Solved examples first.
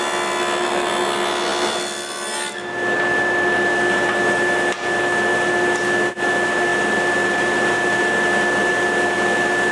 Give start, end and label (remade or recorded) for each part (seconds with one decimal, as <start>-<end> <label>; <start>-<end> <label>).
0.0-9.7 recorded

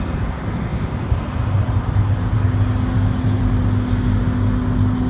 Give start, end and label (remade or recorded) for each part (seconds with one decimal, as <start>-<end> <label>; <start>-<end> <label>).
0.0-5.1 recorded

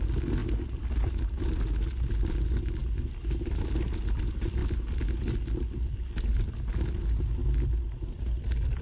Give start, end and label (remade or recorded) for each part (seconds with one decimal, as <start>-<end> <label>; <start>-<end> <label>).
0.0-8.8 recorded

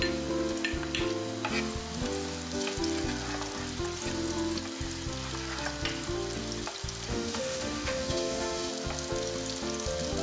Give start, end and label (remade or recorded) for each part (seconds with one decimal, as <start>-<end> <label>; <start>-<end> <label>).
0.0-7.1 recorded; 7.1-8.7 remade; 8.7-10.2 recorded

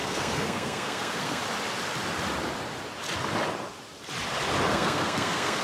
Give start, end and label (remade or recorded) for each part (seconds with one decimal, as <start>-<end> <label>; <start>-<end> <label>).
0.0-1.4 remade; 1.4-4.7 recorded; 4.7-5.6 remade